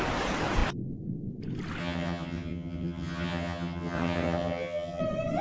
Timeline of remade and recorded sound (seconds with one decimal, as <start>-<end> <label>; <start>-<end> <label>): 0.0-1.8 recorded; 1.8-5.0 remade; 5.0-5.4 recorded